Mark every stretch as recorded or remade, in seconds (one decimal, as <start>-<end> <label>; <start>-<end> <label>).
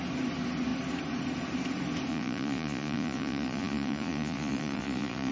0.0-2.1 recorded; 2.1-5.3 remade